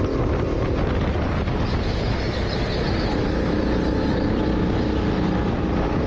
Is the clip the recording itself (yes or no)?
yes